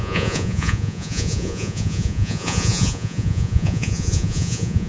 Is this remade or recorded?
remade